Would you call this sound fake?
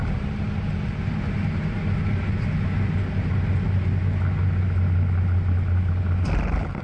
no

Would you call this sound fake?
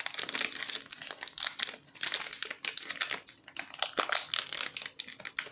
no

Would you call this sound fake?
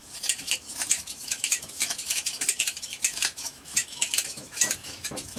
yes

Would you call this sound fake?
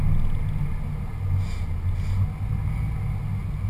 no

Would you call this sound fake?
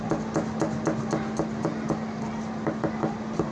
no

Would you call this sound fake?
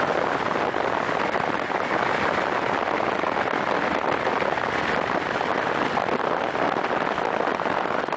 no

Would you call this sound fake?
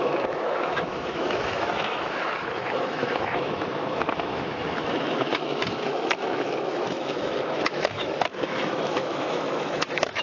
yes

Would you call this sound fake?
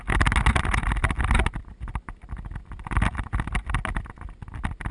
no